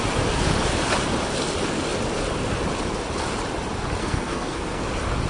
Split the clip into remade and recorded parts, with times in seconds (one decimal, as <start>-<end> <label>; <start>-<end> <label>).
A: 0.0-4.0 recorded; 4.0-4.8 remade; 4.8-5.3 recorded